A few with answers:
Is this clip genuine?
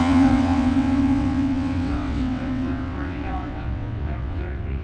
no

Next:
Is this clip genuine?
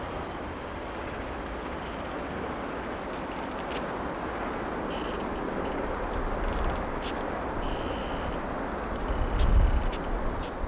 yes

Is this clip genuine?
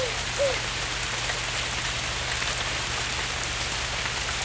yes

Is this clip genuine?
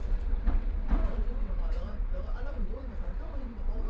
no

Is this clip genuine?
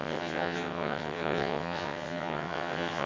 no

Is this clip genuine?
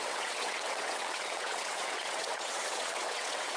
no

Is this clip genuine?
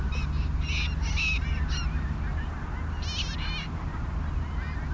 yes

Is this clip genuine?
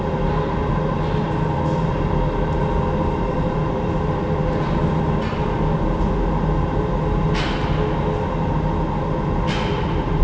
yes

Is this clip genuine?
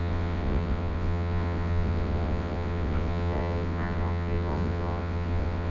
no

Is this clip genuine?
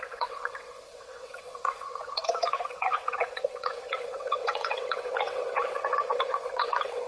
no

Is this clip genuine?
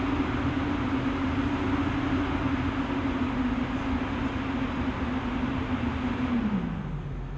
yes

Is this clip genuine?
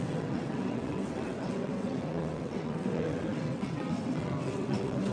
no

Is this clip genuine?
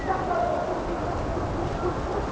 yes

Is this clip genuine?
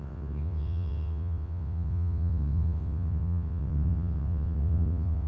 no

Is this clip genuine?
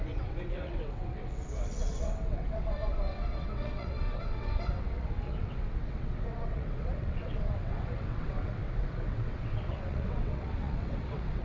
no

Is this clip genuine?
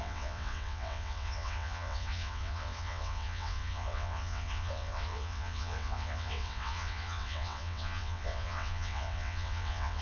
no